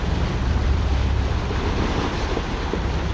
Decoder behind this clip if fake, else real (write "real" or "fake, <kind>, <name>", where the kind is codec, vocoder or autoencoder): fake, vocoder, BigVGAN v2